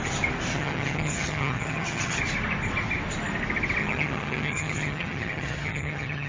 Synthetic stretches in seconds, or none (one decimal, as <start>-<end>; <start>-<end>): 0.5-2.2; 3.8-6.3